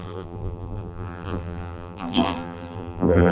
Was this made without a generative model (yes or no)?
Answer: no